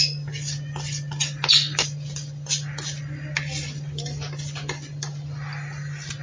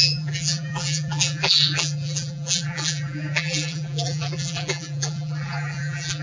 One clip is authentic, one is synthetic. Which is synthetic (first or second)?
second